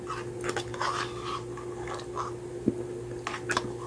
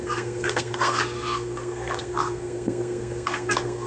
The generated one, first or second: second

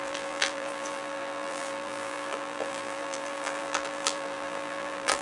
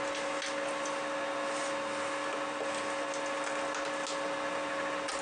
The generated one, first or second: first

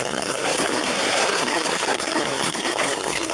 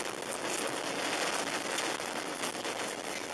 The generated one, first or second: first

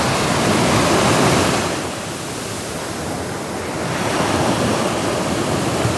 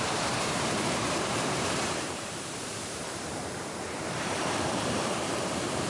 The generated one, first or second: second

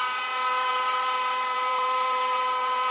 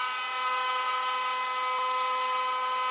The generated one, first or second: first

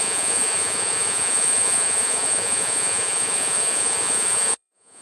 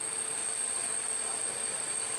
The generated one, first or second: first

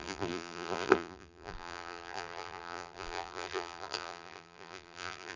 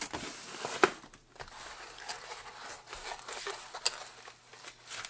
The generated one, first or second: first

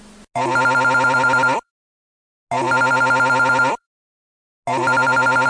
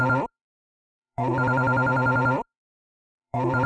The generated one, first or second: second